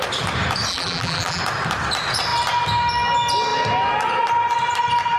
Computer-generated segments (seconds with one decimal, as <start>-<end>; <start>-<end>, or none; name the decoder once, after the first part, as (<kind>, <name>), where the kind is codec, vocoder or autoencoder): 0.7-1.4 (vocoder, BigVGAN v2)